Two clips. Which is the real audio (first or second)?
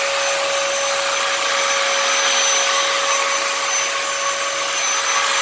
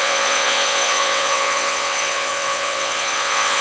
first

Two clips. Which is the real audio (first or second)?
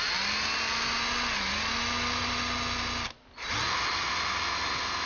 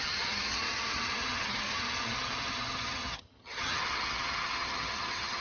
first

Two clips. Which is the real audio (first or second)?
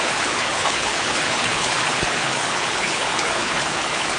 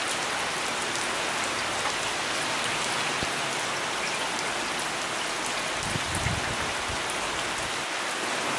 second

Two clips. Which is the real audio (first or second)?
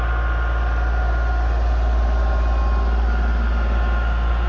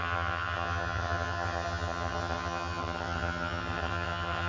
first